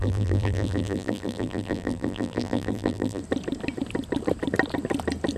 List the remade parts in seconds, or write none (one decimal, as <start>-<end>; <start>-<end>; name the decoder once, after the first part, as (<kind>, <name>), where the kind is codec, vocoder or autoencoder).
0.0-3.2 (vocoder, BigVGAN v2)